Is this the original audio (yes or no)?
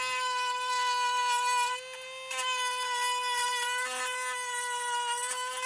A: yes